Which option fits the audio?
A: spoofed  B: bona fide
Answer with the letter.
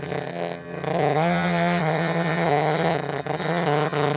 A